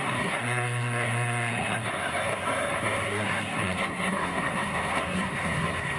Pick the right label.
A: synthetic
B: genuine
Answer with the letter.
A